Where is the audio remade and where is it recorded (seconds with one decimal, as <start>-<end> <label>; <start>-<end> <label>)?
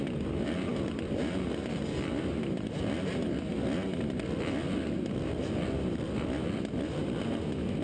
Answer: 0.0-7.8 recorded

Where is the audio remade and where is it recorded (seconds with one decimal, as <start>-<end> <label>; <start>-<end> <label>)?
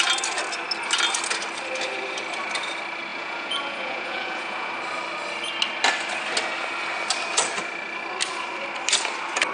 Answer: 0.0-3.1 recorded; 3.1-4.7 remade; 4.7-9.5 recorded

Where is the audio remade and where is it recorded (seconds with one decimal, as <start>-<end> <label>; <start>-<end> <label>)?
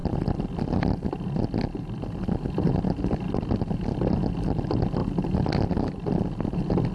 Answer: 0.0-6.9 recorded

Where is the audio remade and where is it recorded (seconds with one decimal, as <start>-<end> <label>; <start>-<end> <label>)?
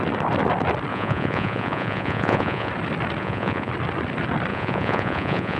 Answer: 0.0-0.9 recorded; 0.9-2.7 remade; 2.7-3.2 recorded; 3.2-3.7 remade; 3.7-4.5 recorded; 4.5-5.6 remade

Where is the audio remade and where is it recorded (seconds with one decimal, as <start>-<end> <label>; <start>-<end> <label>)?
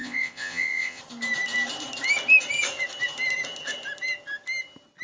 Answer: 0.0-1.0 remade; 1.0-5.0 recorded